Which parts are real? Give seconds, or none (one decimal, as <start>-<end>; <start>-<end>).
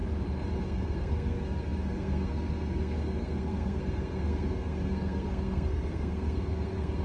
0.0-0.6